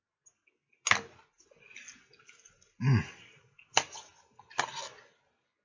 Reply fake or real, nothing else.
real